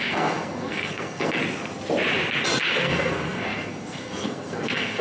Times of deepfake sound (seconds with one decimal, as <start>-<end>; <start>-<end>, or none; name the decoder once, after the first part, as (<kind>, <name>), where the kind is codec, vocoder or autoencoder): 0.0-1.4 (codec, SNAC); 2.7-5.0